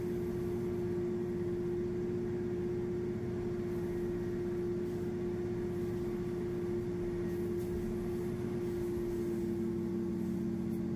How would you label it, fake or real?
real